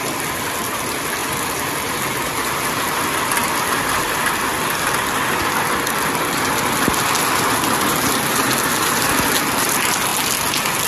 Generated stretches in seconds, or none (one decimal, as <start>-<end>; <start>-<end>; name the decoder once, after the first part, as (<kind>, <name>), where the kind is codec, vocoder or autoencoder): none

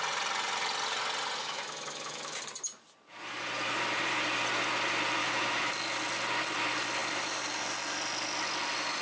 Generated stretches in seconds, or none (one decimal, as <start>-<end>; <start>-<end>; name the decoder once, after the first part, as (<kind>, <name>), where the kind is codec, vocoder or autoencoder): 1.4-2.4 (autoencoder, DAC-VAE); 5.2-5.7

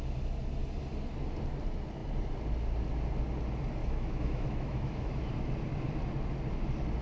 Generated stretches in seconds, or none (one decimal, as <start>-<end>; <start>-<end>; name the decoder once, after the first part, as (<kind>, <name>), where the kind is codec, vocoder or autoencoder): 3.8-5.3 (autoencoder, DAC-VAE)

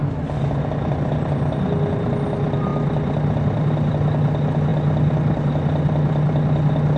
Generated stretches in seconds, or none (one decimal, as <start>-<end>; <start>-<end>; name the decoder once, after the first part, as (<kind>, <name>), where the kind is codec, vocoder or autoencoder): none

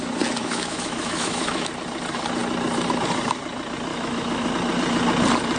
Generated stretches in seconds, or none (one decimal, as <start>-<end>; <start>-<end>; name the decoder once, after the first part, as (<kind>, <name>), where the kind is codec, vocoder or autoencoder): 0.4-1.7 (autoencoder, DAC-VAE); 3.9-4.5

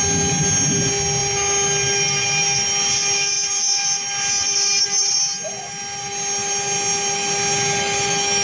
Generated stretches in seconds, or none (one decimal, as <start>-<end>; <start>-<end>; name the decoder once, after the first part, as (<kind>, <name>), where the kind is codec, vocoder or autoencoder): none

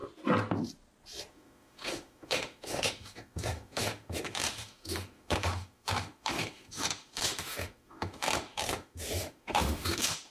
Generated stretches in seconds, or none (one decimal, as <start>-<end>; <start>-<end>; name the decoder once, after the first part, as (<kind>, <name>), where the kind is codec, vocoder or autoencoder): 1.3-10.3 (autoencoder, DAC-VAE)